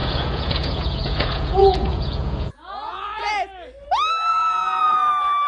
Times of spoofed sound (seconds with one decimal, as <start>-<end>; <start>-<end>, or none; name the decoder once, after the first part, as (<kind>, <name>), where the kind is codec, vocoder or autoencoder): 0.0-3.3 (vocoder, Vocos); 4.3-5.1